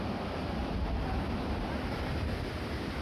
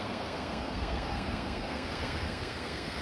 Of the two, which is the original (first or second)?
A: first